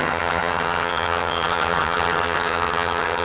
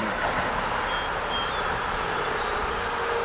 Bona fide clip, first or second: second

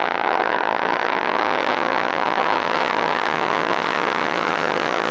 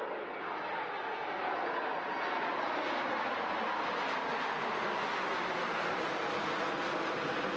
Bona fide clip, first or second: second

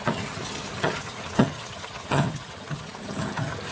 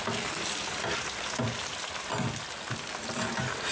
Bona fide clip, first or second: second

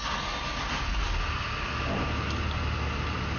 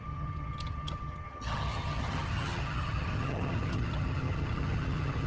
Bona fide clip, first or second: first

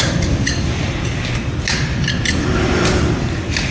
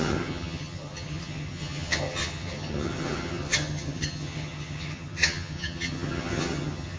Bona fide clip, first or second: first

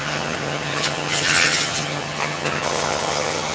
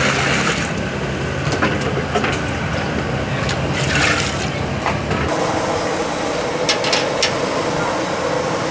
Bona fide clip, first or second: second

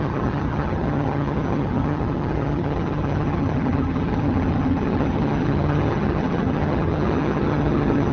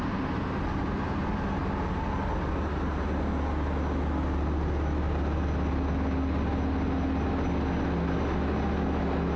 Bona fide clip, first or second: second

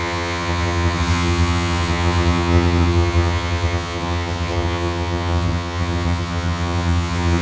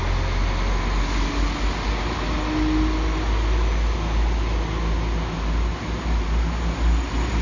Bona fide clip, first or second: second